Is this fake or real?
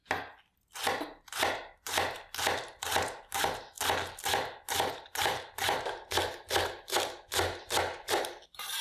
real